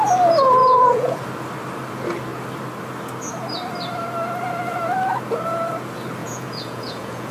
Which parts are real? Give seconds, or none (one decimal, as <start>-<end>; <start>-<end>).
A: 0.0-0.6; 1.2-6.2